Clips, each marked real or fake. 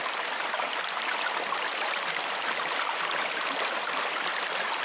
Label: real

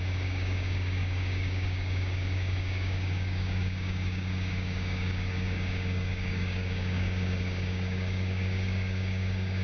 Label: fake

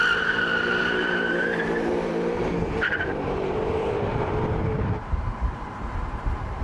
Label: fake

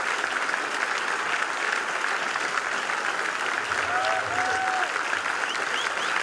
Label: real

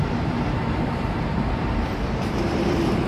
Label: fake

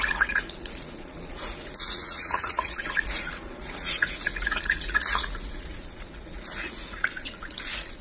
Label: fake